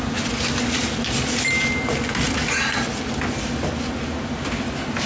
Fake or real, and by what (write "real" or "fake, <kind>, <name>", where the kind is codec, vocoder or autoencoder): real